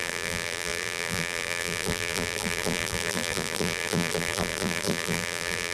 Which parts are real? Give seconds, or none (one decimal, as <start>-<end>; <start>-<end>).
none